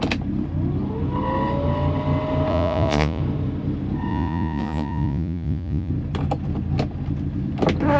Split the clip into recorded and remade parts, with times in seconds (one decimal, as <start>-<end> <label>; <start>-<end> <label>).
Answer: 0.0-2.5 recorded; 2.5-3.2 remade; 3.2-4.1 recorded; 4.1-5.9 remade; 5.9-8.0 recorded

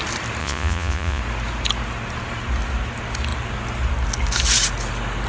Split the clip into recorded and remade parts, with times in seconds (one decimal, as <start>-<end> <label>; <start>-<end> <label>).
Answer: 0.0-0.4 recorded; 0.4-1.2 remade; 1.2-5.3 recorded

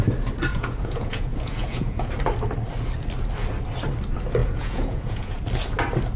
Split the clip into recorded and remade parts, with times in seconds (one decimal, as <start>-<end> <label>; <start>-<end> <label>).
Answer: 0.0-0.5 recorded; 0.5-2.1 remade; 2.1-4.4 recorded; 4.4-5.4 remade; 5.4-6.2 recorded

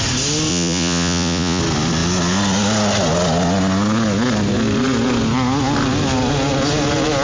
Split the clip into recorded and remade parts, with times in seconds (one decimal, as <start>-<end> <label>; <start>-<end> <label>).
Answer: 0.0-0.5 recorded; 0.5-1.6 remade; 1.6-7.2 recorded